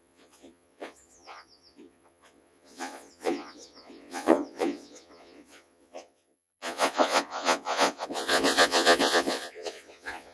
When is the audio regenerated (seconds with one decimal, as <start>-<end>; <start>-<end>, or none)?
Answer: 0.0-10.3